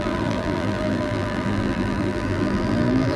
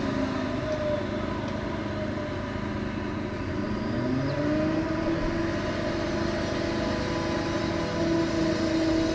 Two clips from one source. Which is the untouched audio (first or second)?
second